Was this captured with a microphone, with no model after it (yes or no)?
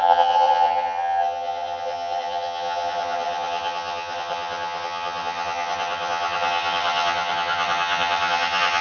no